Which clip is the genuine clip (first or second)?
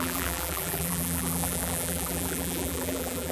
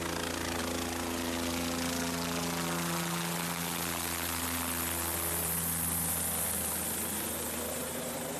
second